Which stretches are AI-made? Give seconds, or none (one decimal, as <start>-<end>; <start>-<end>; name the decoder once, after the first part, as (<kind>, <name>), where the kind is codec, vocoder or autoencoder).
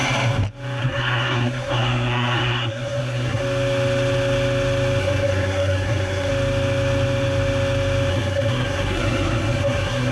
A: 0.8-3.4 (codec, SNAC); 5.0-6.3; 8.1-10.1